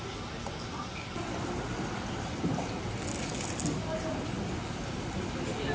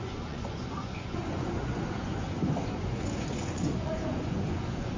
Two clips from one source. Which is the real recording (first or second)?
first